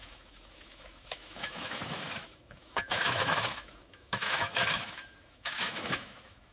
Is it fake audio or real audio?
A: fake